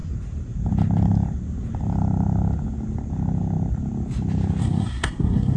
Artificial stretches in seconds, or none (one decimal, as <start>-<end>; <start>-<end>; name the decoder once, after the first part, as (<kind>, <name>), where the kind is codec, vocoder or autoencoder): 4.6-5.6 (codec, SNAC)